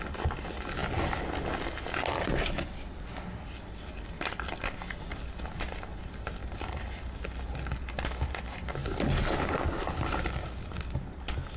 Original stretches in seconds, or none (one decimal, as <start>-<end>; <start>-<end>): 0.0-11.6